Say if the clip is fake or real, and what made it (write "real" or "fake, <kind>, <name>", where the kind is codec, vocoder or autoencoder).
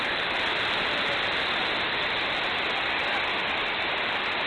fake, vocoder, BigVGAN v2